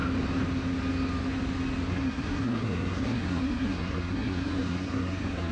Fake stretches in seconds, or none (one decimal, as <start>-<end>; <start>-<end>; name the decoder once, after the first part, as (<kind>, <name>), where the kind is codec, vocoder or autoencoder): 1.9-5.5 (codec, SNAC)